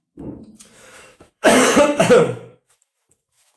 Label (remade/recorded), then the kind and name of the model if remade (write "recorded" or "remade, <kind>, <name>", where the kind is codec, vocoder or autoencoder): remade, autoencoder, DAC-VAE